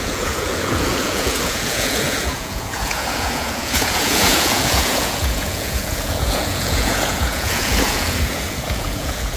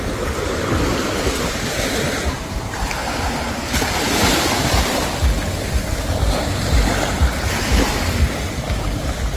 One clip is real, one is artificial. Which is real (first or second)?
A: second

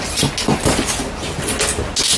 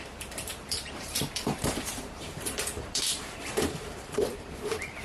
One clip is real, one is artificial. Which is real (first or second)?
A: first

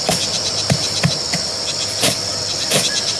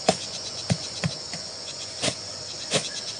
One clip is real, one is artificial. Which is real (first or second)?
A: first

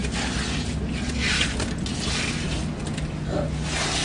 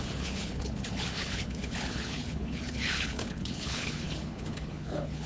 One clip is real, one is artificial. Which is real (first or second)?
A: first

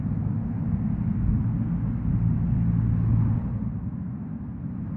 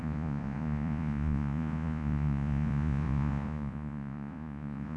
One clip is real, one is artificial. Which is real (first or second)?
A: first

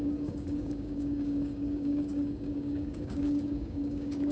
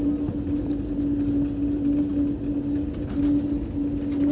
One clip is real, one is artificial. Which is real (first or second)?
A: second